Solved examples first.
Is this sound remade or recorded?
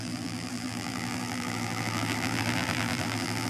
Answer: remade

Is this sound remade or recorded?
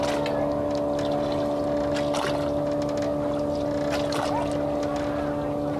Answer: recorded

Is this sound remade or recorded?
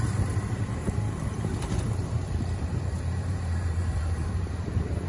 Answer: remade